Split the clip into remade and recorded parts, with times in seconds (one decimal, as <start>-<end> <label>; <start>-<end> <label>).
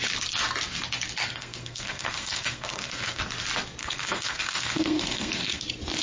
0.0-1.2 recorded; 1.2-3.2 remade; 3.2-3.8 recorded; 3.8-5.6 remade; 5.6-6.0 recorded